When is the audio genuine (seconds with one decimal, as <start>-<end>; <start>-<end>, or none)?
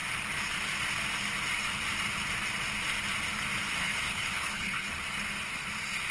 0.0-3.8; 4.9-6.1